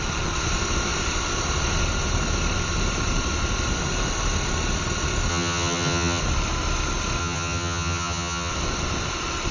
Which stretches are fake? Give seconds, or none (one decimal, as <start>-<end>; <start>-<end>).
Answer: 5.3-6.2; 7.2-8.5